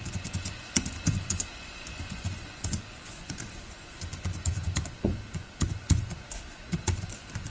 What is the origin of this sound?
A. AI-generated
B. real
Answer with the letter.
A